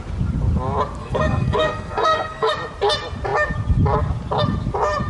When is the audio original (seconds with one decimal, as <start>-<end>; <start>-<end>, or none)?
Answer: 0.0-1.0; 2.5-5.1